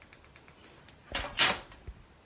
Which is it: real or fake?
real